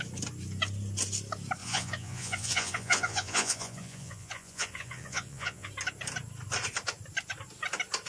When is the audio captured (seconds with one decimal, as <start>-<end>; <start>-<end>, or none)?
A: 0.0-1.6; 5.7-8.1